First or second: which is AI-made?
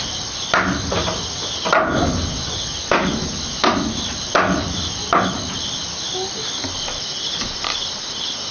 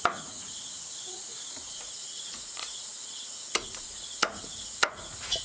second